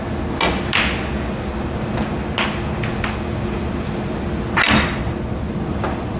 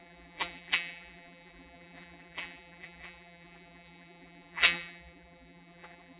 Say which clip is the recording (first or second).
first